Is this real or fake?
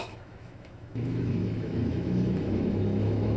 fake